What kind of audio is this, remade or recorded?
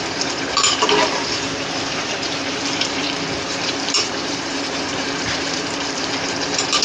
remade